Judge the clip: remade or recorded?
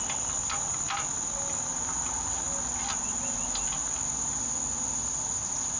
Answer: recorded